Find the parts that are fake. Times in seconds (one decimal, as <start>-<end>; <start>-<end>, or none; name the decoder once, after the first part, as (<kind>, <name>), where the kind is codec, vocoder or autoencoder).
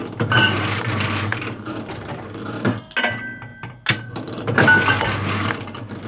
none